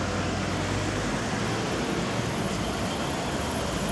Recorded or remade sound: recorded